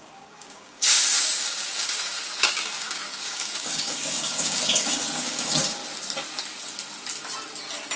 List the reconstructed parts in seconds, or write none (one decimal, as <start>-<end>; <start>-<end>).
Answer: 0.0-5.8